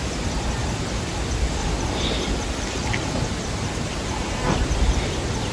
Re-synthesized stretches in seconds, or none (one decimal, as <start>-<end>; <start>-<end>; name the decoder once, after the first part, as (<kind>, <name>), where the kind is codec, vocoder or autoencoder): none